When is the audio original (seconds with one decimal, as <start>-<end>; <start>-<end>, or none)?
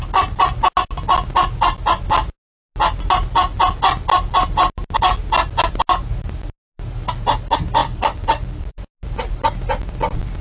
0.0-7.8; 8.7-10.4